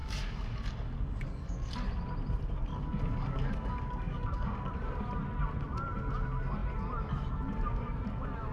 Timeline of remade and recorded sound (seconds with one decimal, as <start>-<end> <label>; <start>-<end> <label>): 0.0-1.7 remade; 1.7-2.7 recorded; 2.7-4.7 remade; 4.7-8.5 recorded